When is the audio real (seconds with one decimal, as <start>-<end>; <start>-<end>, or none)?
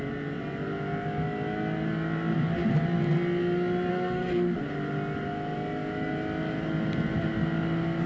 0.0-3.9; 4.5-8.1